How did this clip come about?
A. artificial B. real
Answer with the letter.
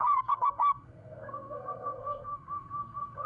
A